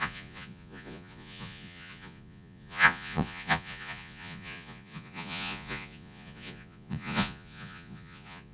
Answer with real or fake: fake